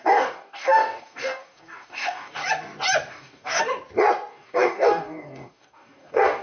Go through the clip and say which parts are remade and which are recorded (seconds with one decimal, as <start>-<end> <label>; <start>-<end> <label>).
0.0-2.4 remade; 2.4-3.1 recorded; 3.1-3.6 remade; 3.6-4.3 recorded; 4.3-6.4 remade